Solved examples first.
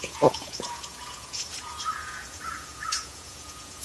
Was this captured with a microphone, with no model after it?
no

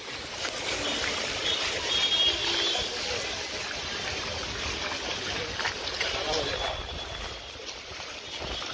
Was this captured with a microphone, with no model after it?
yes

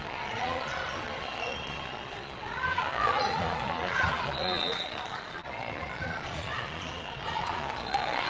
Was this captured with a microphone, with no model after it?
no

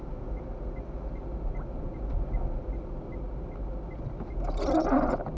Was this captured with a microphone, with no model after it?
yes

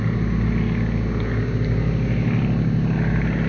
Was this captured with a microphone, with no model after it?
yes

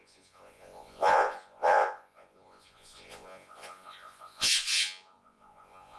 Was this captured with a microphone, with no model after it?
no